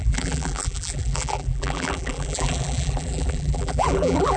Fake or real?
fake